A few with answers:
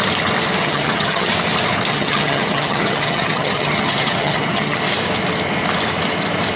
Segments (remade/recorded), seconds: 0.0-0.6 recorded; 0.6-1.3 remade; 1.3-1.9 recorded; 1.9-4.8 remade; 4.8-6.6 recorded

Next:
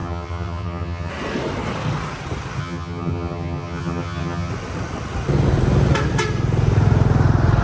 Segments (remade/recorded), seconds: 0.0-1.1 remade; 1.1-2.6 recorded; 2.6-4.5 remade; 4.5-7.6 recorded

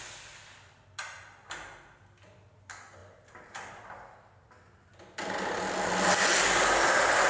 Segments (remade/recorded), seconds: 0.0-7.3 recorded

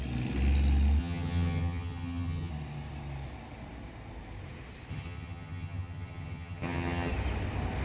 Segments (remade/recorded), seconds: 0.0-1.0 recorded; 1.0-2.5 remade; 2.5-4.9 recorded; 4.9-7.1 remade; 7.1-7.8 recorded

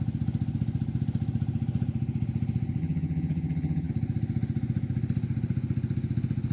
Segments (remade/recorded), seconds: 0.0-2.8 recorded; 2.8-3.9 remade; 3.9-6.5 recorded

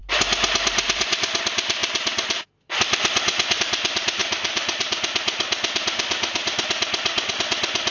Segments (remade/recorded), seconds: 0.0-7.9 recorded

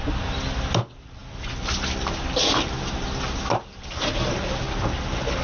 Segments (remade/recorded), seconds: 0.0-5.4 recorded